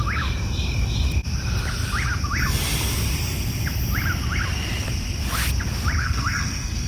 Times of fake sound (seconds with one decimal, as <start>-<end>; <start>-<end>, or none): 6.0-6.9